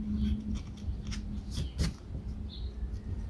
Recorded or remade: recorded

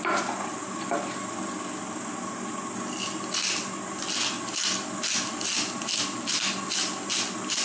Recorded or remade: recorded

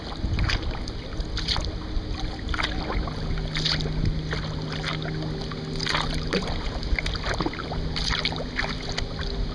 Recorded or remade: recorded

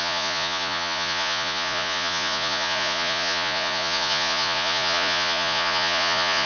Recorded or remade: remade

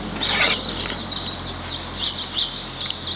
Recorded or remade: recorded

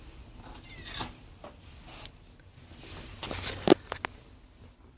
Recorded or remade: recorded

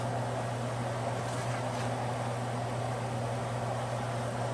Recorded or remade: recorded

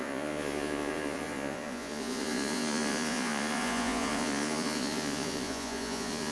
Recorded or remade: remade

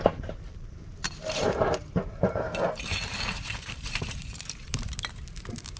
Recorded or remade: remade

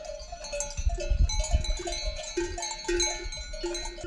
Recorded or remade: recorded